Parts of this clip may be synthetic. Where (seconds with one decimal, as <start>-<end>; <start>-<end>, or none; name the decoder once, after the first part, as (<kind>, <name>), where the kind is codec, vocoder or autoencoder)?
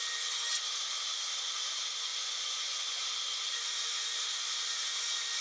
2.1-3.0 (vocoder, Vocos)